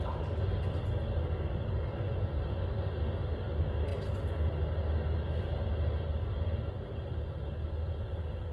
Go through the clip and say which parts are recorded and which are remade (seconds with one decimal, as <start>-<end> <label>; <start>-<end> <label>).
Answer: 0.0-8.5 recorded